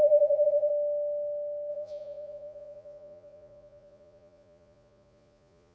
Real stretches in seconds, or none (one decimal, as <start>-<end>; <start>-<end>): 0.7-1.7